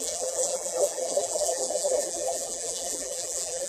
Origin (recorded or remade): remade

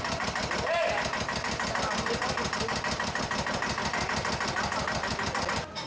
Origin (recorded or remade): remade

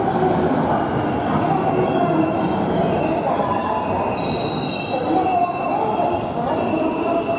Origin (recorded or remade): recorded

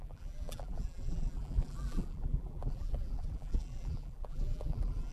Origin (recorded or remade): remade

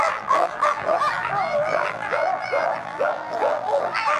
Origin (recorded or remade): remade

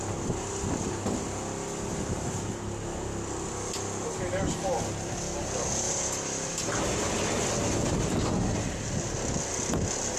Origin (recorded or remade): recorded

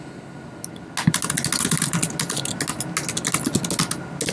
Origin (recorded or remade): recorded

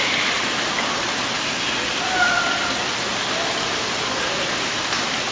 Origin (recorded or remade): recorded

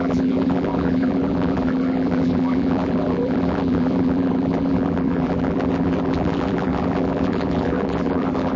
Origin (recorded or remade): remade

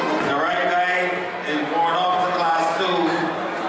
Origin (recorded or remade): recorded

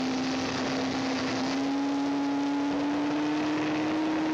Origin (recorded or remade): recorded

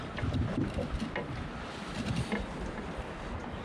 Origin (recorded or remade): recorded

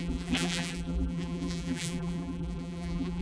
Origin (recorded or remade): remade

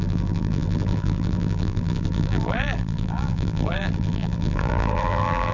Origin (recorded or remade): remade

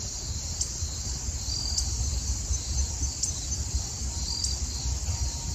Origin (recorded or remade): recorded